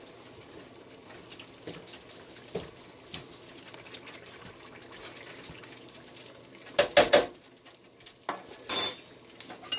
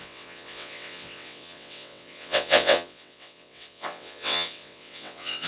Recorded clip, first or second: first